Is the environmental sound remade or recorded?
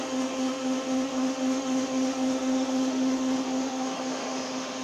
remade